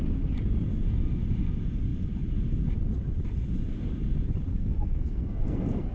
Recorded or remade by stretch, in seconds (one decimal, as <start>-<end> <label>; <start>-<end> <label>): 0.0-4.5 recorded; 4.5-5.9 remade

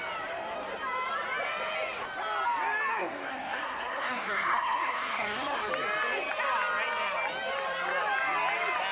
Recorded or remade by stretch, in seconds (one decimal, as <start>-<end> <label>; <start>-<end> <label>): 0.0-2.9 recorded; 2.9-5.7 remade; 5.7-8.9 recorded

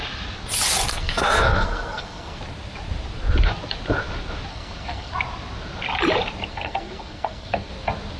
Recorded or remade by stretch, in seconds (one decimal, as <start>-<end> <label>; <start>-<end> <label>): 0.0-0.9 recorded; 0.9-2.4 remade; 2.4-4.5 recorded; 4.5-5.1 remade; 5.1-6.5 recorded; 6.5-7.7 remade; 7.7-8.2 recorded